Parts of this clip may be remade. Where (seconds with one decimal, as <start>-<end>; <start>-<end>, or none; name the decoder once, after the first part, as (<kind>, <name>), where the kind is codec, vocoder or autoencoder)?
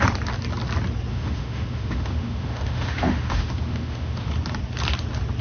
1.1-4.3 (autoencoder, DAC-VAE)